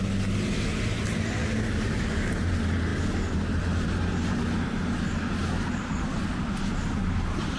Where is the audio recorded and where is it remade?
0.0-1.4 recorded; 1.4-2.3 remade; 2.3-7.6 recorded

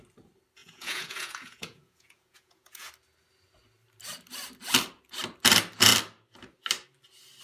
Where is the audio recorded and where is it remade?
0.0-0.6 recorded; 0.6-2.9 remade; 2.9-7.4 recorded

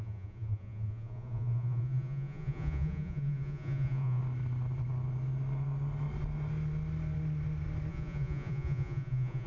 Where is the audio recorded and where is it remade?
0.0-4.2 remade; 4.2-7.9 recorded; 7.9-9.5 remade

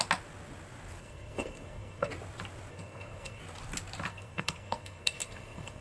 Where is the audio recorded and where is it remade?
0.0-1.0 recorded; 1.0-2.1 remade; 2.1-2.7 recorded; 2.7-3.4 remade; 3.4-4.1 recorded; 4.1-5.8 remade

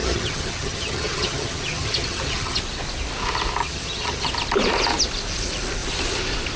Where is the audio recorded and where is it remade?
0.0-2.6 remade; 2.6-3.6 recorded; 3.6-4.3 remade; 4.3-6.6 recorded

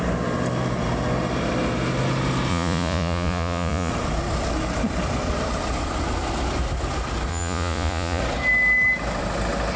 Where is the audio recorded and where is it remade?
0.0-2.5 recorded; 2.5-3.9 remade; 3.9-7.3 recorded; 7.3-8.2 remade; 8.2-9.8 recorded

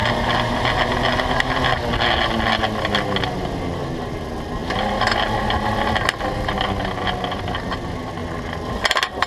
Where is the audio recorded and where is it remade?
0.0-9.3 recorded